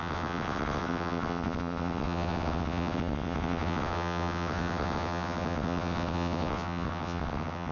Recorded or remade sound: remade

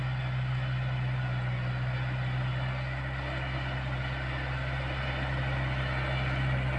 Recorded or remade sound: recorded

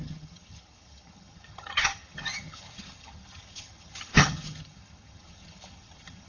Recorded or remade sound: remade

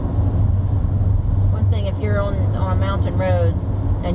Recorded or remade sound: recorded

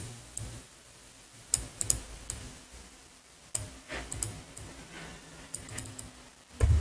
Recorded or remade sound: recorded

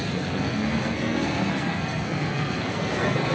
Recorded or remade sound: remade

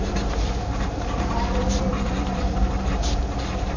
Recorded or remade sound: remade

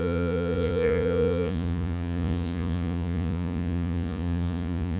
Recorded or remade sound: remade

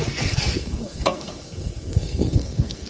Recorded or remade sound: remade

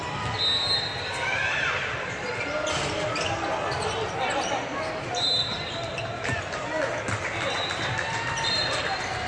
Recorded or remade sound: recorded